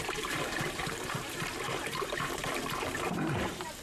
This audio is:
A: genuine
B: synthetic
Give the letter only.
B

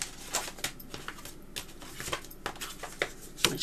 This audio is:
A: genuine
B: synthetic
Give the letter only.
A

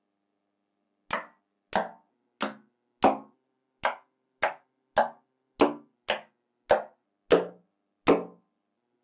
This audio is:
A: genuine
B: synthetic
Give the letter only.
A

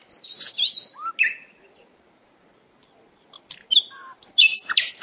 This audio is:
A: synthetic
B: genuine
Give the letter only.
B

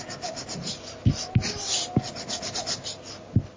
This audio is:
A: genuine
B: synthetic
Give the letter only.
A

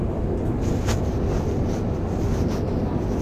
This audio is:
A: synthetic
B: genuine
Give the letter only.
B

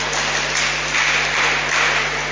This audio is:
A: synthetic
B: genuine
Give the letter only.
B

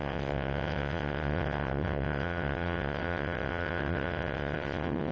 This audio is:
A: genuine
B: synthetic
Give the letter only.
B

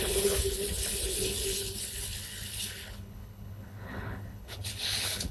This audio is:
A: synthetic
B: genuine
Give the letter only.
A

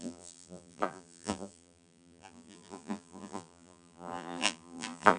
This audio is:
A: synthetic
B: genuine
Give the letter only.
A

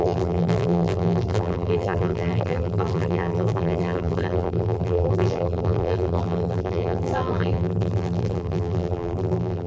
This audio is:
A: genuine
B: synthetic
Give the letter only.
B